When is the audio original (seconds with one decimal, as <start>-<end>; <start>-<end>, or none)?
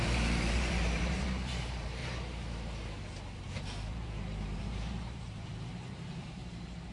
2.0-3.9